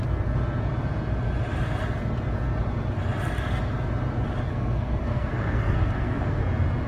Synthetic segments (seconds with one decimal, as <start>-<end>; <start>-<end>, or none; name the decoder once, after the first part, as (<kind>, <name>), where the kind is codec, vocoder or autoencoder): 4.5-6.4 (codec, SNAC)